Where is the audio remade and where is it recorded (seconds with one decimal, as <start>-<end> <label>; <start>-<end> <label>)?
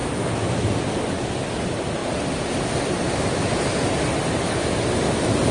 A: 0.0-5.5 recorded